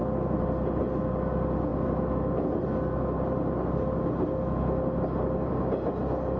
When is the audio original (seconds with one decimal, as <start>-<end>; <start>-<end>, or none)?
0.0-6.4